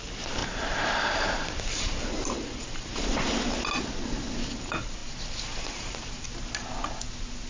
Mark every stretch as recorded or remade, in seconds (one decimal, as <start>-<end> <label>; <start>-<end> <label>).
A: 0.0-0.4 recorded; 0.4-3.6 remade; 3.6-5.0 recorded; 5.0-6.3 remade; 6.3-7.5 recorded